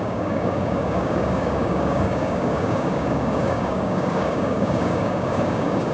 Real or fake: fake